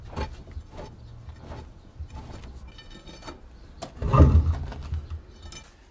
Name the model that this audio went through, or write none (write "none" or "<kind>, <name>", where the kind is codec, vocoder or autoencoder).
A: none